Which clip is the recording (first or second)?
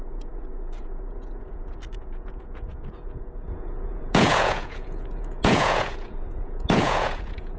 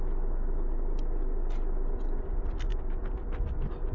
second